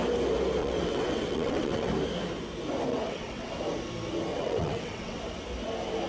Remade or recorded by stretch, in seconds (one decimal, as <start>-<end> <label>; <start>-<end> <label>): 0.0-0.6 recorded; 0.6-1.9 remade; 1.9-2.9 recorded; 2.9-3.5 remade; 3.5-4.3 recorded; 4.3-5.2 remade; 5.2-6.1 recorded

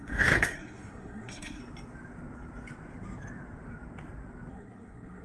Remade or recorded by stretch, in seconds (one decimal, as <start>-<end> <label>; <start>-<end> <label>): 0.0-1.6 remade; 1.6-4.5 recorded; 4.5-5.2 remade